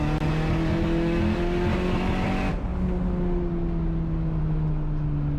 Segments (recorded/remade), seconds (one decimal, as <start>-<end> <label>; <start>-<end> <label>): 0.0-5.4 recorded